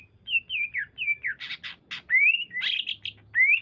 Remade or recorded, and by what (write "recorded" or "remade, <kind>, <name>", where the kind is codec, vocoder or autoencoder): recorded